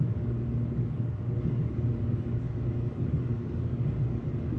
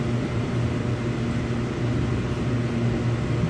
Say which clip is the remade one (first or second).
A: first